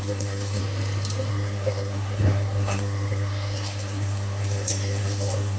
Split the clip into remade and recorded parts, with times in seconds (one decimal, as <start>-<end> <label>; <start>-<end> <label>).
0.0-0.6 remade; 0.6-1.3 recorded; 1.3-5.6 remade